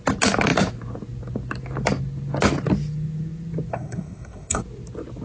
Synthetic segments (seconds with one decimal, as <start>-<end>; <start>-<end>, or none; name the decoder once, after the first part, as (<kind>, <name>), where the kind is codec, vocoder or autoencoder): 3.7-4.6 (codec, SNAC)